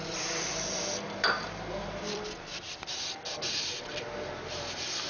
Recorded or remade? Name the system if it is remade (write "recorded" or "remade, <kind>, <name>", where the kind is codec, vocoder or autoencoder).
remade, vocoder, BigVGAN v2